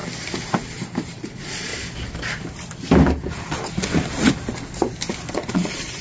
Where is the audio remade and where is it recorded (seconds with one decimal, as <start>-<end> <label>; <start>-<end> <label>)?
0.0-1.2 recorded; 1.2-1.7 remade; 1.7-5.3 recorded; 5.3-6.0 remade